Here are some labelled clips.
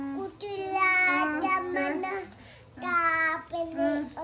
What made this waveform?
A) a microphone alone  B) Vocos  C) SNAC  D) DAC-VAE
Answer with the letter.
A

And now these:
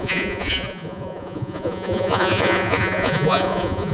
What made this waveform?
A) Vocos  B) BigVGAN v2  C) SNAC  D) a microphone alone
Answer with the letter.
A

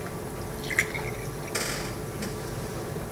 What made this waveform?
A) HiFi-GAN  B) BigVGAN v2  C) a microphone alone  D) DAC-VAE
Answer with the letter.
C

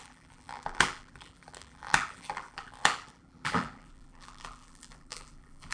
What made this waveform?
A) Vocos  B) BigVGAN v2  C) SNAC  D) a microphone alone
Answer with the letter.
B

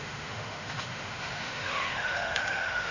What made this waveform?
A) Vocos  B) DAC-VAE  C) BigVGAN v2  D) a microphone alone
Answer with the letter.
B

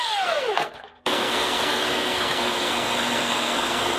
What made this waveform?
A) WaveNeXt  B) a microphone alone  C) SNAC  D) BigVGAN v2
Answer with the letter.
C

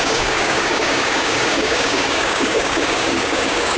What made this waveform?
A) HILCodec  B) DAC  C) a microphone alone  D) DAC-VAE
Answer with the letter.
B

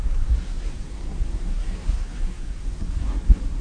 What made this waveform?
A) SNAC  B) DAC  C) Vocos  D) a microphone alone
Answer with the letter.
A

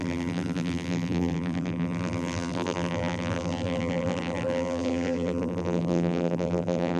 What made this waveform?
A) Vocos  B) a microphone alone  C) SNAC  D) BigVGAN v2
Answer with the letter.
D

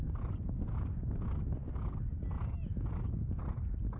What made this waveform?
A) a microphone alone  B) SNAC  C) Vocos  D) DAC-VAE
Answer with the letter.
A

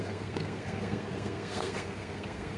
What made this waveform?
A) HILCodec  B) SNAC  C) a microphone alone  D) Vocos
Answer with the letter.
B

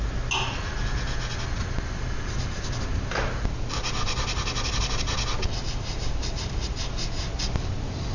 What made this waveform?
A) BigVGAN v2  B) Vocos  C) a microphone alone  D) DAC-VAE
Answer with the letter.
C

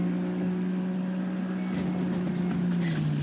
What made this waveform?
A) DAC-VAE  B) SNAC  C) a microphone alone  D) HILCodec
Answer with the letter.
C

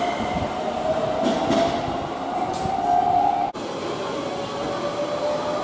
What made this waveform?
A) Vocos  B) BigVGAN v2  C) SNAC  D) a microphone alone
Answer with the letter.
D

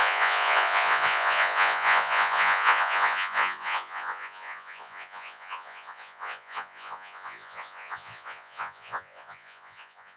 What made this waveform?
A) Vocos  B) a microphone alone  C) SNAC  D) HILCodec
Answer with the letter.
A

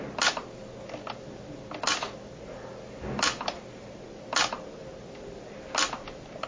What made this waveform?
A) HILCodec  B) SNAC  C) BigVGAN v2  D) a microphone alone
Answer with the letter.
D